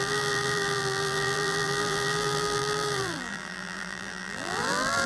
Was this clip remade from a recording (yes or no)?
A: yes